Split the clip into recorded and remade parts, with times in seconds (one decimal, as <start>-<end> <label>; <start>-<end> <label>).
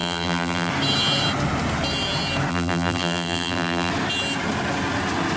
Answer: 0.0-0.7 remade; 0.7-2.5 recorded; 2.5-3.9 remade; 3.9-5.4 recorded